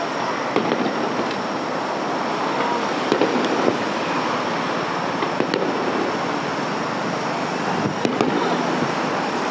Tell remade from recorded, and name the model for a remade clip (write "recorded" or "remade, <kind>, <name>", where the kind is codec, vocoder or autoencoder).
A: recorded